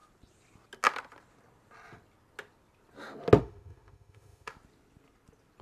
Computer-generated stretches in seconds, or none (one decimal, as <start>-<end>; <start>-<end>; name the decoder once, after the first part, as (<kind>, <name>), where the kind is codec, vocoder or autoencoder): 3.4-4.5 (autoencoder, DAC-VAE)